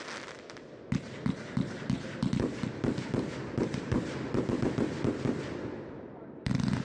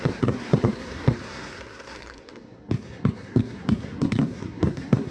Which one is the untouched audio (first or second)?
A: first